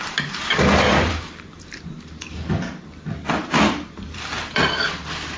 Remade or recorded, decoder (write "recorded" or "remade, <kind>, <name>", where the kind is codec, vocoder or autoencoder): remade, vocoder, BigVGAN v2